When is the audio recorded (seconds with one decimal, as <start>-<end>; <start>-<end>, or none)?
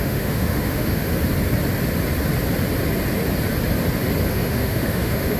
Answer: 1.1-4.3